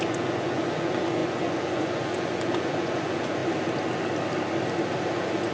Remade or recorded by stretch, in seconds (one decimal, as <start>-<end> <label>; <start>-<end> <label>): 0.0-3.4 remade; 3.4-5.0 recorded; 5.0-5.5 remade